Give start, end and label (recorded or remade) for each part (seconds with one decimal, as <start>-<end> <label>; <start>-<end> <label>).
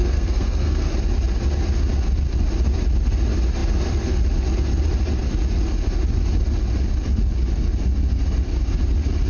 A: 0.0-0.9 remade; 0.9-9.3 recorded